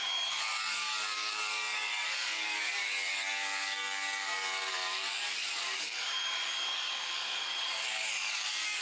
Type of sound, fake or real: fake